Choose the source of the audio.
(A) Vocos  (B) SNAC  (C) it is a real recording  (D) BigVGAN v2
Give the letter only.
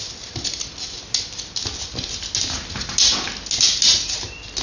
C